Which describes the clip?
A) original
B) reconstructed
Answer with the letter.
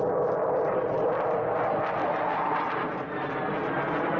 A